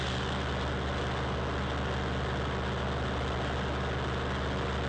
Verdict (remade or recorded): recorded